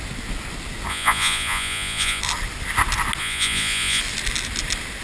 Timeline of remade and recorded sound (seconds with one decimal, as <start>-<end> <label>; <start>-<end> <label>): 0.0-0.9 recorded; 0.9-2.2 remade; 2.2-3.2 recorded; 3.2-4.0 remade; 4.0-5.0 recorded